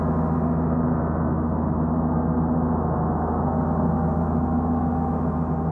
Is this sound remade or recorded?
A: recorded